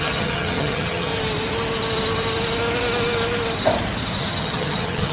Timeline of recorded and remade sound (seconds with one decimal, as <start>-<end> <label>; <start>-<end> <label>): 0.0-1.1 remade; 1.1-4.2 recorded; 4.2-5.1 remade